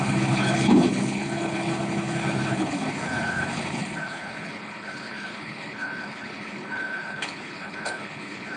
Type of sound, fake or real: fake